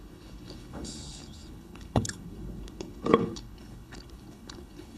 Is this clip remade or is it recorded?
remade